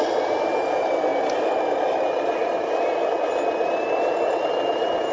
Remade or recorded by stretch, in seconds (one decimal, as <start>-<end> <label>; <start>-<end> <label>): 0.0-5.1 recorded

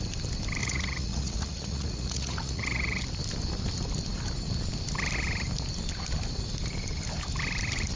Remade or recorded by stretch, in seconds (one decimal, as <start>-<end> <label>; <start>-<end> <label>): 0.0-0.6 recorded; 0.6-3.0 remade; 3.0-8.0 recorded

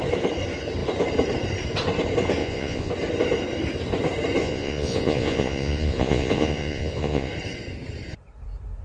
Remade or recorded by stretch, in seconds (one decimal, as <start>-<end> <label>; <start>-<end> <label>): 0.0-2.4 recorded; 2.4-2.9 remade; 2.9-4.4 recorded; 4.4-7.3 remade; 7.3-8.8 recorded

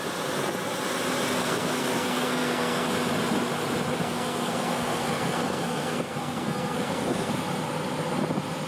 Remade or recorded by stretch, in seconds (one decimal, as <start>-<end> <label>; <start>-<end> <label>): 0.0-1.4 recorded; 1.4-2.9 remade; 2.9-3.9 recorded; 3.9-7.3 remade; 7.3-8.7 recorded

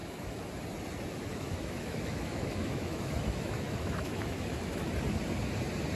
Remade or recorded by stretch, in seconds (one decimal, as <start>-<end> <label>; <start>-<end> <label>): 0.0-0.5 remade; 0.5-1.3 recorded; 1.3-4.9 remade; 4.9-6.0 recorded

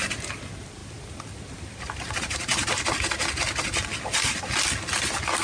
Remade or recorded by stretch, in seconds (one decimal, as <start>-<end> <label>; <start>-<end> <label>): 0.0-5.4 recorded

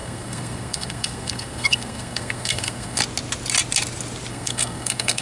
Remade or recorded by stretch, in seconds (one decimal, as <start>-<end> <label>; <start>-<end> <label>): 0.0-3.0 remade; 3.0-4.3 recorded; 4.3-5.2 remade